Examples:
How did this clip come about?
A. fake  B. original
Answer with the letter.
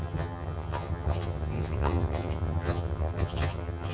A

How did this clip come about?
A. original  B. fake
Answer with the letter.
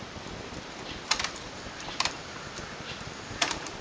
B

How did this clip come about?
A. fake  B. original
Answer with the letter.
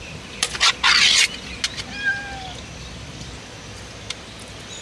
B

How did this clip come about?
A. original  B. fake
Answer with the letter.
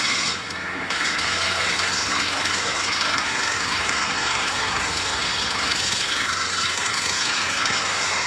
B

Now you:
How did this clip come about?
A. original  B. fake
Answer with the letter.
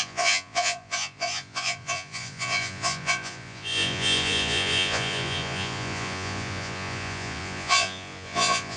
B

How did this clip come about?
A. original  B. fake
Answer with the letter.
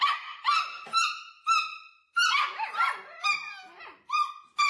A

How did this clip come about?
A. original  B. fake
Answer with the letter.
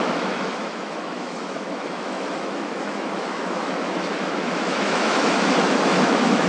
B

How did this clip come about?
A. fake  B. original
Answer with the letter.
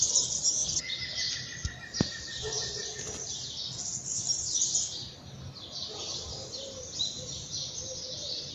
B